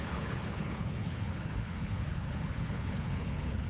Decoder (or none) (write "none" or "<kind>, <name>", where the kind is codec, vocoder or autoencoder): codec, HILCodec